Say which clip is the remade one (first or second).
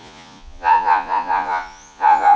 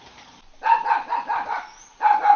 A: first